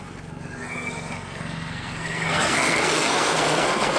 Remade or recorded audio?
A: remade